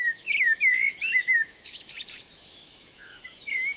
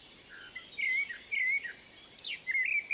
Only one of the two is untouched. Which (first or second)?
second